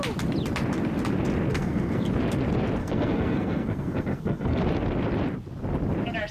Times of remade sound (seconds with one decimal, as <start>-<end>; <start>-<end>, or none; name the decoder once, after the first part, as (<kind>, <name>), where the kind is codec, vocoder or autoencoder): 1.5-2.1 (codec, SNAC); 2.8-4.6